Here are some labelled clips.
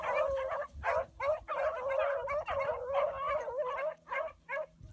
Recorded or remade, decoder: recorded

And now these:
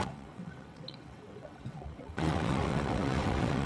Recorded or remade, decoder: remade, vocoder, WaveNeXt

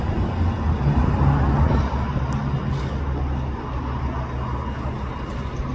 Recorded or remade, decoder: recorded